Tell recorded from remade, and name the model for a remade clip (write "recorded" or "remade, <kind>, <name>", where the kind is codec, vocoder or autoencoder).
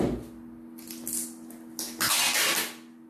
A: recorded